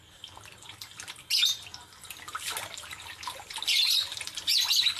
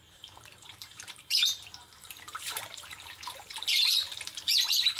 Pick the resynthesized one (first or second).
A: second